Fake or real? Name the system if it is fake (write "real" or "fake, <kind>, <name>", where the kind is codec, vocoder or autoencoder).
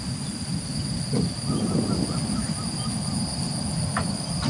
real